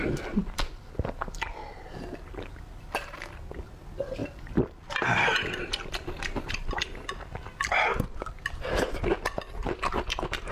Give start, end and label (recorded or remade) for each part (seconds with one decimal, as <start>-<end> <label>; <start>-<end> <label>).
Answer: 0.0-10.5 recorded